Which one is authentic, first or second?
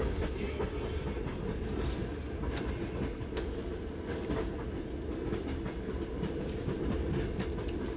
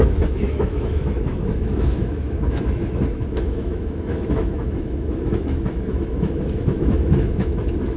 first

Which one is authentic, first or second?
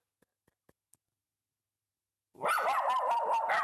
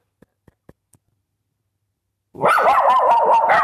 first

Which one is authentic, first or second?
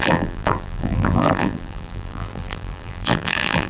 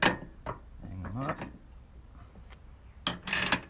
second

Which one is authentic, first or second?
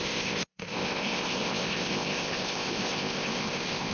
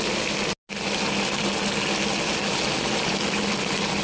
second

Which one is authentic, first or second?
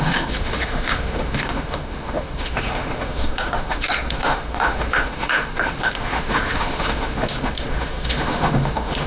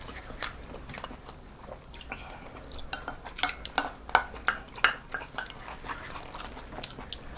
second